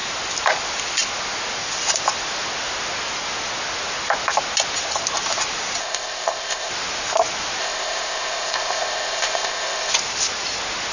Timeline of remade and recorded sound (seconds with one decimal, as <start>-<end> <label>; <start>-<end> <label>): 0.0-5.8 recorded; 5.8-6.7 remade; 6.7-7.6 recorded; 7.6-9.9 remade; 9.9-10.9 recorded